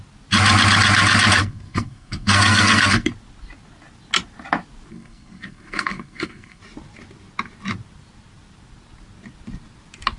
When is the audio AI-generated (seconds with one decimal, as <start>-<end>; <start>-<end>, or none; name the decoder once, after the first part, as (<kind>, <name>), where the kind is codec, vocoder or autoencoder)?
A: 1.4-3.1 (codec, SNAC); 4.9-6.6

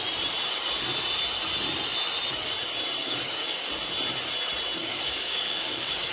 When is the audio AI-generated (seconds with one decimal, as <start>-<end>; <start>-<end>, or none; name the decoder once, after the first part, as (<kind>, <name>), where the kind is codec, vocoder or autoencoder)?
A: 3.0-3.7 (codec, DAC); 4.8-6.1

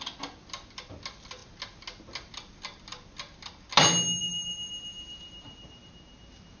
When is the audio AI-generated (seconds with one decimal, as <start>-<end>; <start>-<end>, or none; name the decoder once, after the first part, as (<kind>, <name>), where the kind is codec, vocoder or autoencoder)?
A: 4.2-5.9 (vocoder, BigVGAN v2)